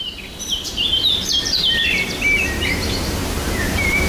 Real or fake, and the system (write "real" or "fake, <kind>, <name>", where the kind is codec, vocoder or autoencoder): fake, vocoder, BigVGAN v2